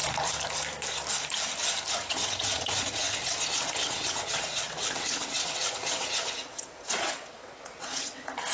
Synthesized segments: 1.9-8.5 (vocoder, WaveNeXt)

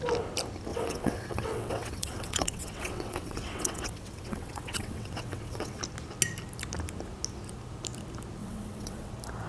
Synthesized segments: 0.7-5.8 (vocoder, WaveNeXt); 8.4-9.1

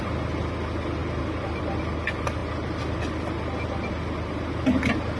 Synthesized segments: none

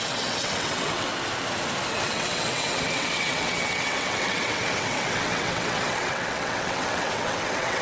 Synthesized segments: 0.0-1.1 (vocoder, WaveNeXt); 1.9-7.8

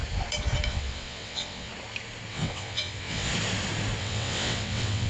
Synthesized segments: 0.7-1.7 (vocoder, WaveNeXt); 2.3-3.3; 4.0-5.1